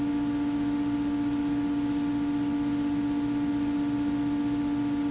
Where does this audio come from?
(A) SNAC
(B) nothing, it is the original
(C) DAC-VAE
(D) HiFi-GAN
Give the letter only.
B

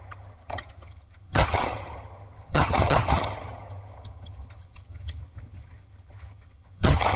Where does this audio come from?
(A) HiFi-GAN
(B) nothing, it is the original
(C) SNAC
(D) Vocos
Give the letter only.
A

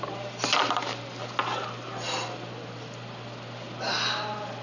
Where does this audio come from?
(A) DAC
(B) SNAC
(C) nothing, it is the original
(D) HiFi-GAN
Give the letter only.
C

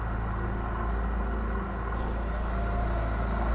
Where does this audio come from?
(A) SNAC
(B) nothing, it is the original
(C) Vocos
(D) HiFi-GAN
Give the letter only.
B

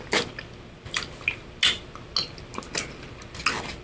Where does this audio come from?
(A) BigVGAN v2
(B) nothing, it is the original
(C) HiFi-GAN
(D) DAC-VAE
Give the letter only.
B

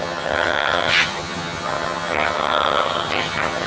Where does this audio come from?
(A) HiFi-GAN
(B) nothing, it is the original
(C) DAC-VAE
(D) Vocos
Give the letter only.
A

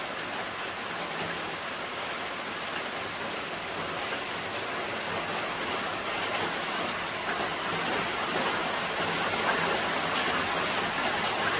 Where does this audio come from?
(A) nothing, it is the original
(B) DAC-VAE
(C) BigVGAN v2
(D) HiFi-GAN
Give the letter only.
A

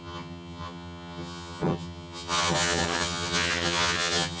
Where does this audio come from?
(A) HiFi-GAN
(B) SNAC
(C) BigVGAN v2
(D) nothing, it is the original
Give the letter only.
A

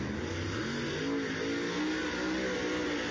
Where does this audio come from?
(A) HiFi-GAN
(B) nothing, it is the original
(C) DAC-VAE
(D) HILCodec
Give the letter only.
B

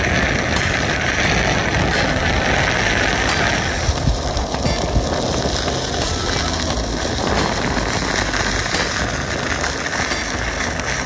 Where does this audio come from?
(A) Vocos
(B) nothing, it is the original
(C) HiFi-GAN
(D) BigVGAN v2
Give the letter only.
B